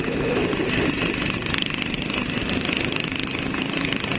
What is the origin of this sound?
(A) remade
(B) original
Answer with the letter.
A